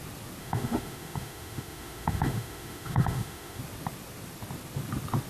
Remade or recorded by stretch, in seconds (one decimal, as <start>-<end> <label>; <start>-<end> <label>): 0.0-0.4 recorded; 0.4-3.6 remade; 3.6-5.3 recorded